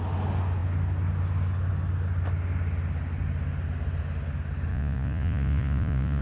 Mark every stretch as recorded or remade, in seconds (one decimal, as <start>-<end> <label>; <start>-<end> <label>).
0.0-4.7 recorded; 4.7-6.2 remade